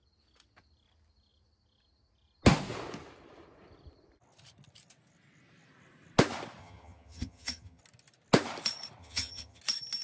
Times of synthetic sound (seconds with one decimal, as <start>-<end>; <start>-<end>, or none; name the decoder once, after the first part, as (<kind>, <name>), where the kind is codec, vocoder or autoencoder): 6.6-7.8 (vocoder, HiFi-GAN); 9.0-9.6